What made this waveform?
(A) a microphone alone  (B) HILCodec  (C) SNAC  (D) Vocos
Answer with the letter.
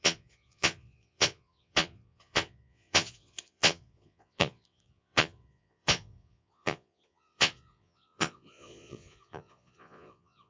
D